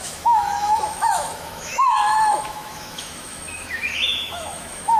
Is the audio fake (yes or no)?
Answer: yes